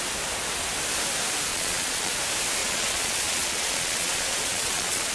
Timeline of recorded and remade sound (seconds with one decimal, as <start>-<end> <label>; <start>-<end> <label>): 0.0-1.5 recorded; 1.5-2.1 remade; 2.1-2.6 recorded; 2.6-5.1 remade